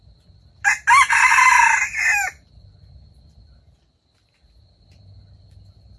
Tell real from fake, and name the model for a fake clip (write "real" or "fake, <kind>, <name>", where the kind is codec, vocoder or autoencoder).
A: real